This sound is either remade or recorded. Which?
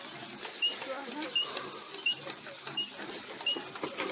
recorded